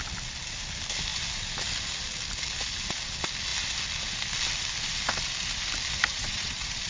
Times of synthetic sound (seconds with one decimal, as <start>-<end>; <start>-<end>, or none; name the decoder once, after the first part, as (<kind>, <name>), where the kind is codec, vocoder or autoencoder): 6.1-6.9 (vocoder, WaveNeXt)